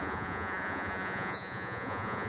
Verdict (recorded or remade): remade